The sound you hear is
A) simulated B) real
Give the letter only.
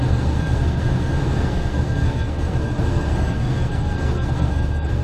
A